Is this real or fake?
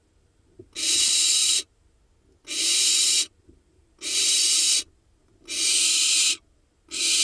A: real